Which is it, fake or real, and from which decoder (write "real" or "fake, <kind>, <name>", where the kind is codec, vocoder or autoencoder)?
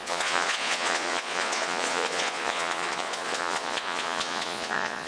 fake, vocoder, Vocos